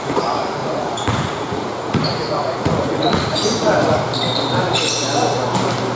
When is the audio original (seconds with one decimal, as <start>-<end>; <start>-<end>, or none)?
0.0-0.6; 3.7-6.0